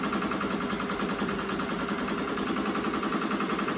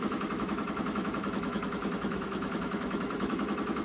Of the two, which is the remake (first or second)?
second